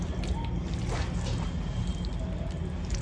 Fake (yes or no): no